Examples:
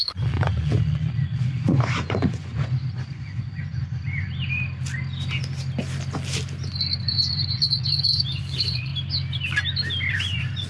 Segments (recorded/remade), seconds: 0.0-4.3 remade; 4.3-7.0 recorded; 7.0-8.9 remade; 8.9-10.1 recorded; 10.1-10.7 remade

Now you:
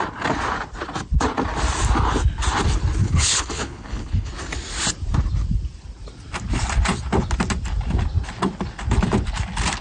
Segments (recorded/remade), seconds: 0.0-3.0 recorded; 3.0-4.3 remade; 4.3-9.8 recorded

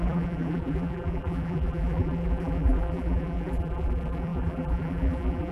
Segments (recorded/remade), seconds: 0.0-5.5 remade

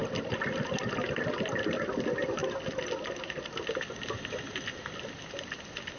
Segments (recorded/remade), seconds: 0.0-1.5 recorded; 1.5-6.0 remade

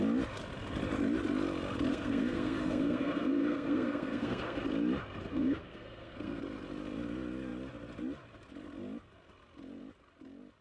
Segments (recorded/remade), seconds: 0.0-1.9 recorded; 1.9-4.6 remade; 4.6-5.3 recorded; 5.3-6.4 remade; 6.4-10.6 recorded

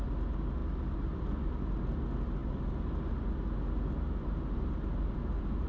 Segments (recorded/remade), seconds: 0.0-0.6 recorded; 0.6-1.5 remade; 1.5-5.7 recorded

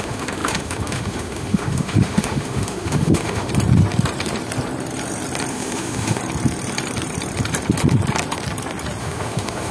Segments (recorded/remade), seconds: 0.0-3.5 remade; 3.5-5.5 recorded; 5.5-6.2 remade; 6.2-9.0 recorded; 9.0-9.7 remade

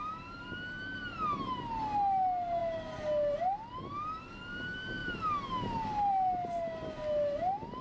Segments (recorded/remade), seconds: 0.0-7.8 recorded